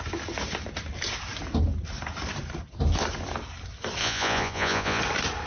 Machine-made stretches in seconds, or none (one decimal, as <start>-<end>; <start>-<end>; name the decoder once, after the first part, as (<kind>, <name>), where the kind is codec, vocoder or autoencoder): 4.0-5.0 (vocoder, Vocos)